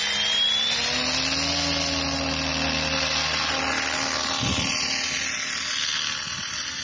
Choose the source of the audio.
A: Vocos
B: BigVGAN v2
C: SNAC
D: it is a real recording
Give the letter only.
D